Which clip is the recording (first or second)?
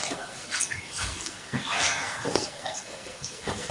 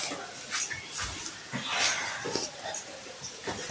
second